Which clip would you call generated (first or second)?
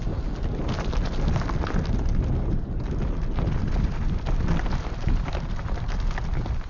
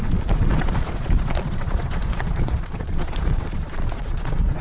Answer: second